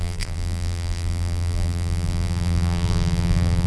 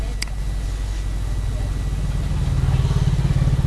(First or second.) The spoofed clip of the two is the first